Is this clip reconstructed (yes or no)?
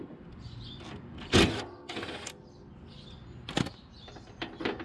no